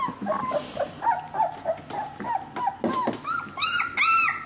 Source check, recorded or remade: recorded